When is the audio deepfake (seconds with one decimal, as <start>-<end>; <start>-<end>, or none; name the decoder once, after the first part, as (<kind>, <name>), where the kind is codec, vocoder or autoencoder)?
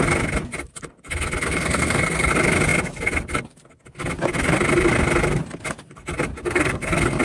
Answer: 1.5-2.3 (codec, SNAC); 6.4-7.2